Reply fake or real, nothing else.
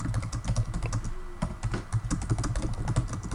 real